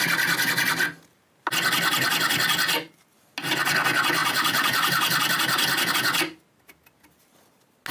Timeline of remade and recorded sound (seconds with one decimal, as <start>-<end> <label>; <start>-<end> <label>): 0.0-4.2 recorded; 4.2-5.9 remade; 5.9-7.9 recorded